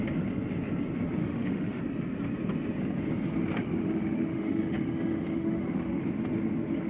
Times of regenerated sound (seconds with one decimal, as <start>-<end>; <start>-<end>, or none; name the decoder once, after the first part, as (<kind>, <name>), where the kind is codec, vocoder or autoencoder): 1.2-1.8 (autoencoder, DAC-VAE); 3.8-6.0